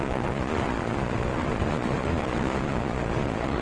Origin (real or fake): fake